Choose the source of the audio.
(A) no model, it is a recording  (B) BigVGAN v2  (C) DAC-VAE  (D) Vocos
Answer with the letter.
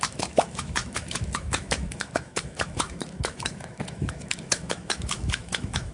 C